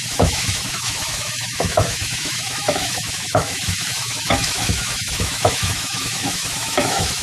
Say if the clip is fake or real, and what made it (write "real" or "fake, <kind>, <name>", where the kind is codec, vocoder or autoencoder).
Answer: fake, autoencoder, DAC-VAE